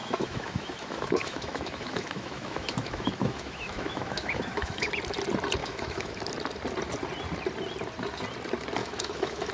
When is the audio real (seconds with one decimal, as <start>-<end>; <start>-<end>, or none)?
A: 5.0-5.6; 6.2-8.8